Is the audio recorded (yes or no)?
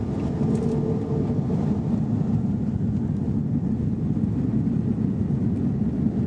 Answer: yes